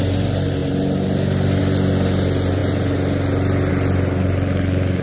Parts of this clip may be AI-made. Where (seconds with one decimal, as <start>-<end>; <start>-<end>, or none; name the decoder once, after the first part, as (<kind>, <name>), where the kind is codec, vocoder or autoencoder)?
none